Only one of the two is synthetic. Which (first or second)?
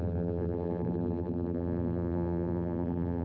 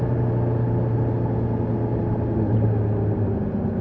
first